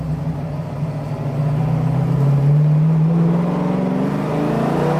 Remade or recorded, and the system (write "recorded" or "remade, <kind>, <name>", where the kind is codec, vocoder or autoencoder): recorded